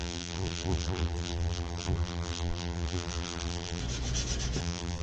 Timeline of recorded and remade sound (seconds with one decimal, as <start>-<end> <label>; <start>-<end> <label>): 0.0-3.8 remade; 3.8-4.6 recorded; 4.6-5.0 remade